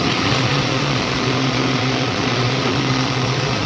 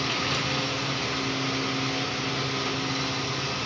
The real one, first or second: second